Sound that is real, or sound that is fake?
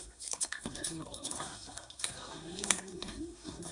fake